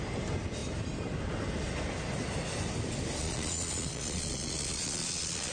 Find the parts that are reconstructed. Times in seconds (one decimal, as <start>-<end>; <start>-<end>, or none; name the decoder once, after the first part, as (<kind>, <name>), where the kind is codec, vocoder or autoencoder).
3.2-5.5 (vocoder, Vocos)